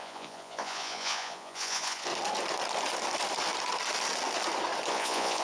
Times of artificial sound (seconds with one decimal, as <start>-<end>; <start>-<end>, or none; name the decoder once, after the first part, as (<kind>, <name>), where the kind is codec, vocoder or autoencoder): 0.0-2.1 (vocoder, Vocos); 4.9-5.4